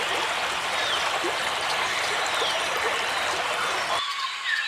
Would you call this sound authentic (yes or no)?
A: yes